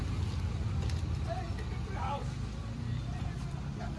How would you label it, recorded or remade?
recorded